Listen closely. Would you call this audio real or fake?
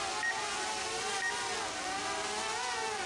real